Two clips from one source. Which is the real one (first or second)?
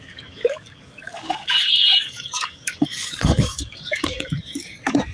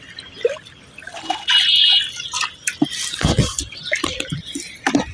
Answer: second